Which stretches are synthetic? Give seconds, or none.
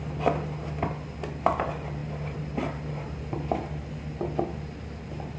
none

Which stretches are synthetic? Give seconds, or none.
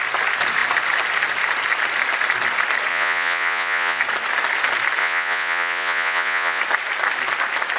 2.9-4.0 (vocoder, Vocos); 5.0-6.6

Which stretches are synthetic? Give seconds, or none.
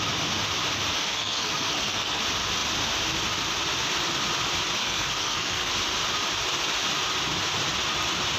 1.0-2.2 (codec, SNAC); 4.8-5.7